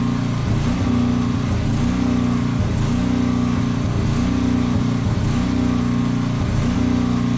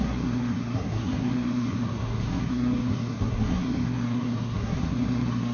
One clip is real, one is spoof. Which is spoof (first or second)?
second